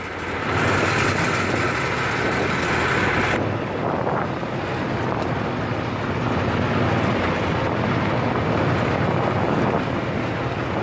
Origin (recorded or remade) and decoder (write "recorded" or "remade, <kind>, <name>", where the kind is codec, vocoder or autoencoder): recorded